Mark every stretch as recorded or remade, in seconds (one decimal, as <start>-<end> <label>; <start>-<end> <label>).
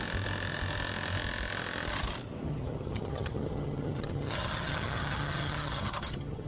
0.0-2.5 recorded; 2.5-6.5 remade